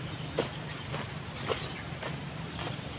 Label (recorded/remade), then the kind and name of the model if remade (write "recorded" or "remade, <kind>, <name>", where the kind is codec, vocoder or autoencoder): recorded